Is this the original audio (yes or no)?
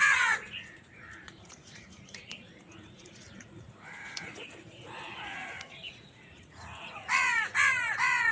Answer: no